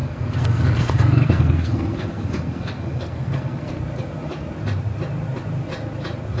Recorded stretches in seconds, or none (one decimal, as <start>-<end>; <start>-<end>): 3.8-6.4